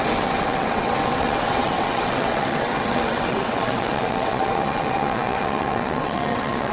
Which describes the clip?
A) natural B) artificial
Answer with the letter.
B